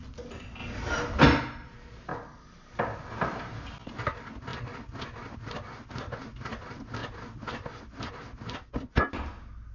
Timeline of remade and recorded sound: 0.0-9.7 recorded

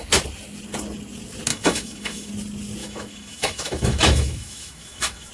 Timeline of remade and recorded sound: 0.0-1.5 recorded; 1.5-2.3 remade; 2.3-2.8 recorded; 2.8-5.3 remade